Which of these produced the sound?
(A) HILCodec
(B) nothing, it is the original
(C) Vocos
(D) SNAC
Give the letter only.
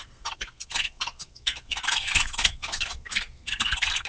D